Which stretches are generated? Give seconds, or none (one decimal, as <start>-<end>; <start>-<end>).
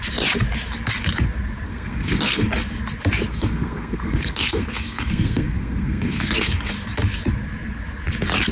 1.7-2.5; 3.3-6.7